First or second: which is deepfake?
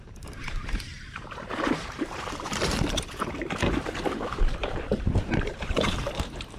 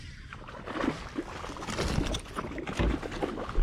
first